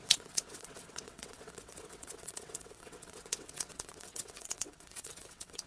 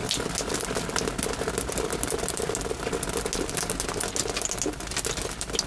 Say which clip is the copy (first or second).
first